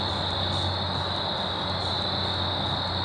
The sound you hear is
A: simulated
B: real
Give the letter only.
B